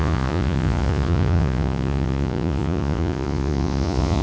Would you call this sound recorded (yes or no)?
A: no